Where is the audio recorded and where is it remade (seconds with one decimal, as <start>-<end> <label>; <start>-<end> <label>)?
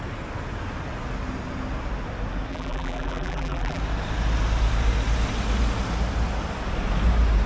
0.0-2.5 recorded; 2.5-3.8 remade; 3.8-7.5 recorded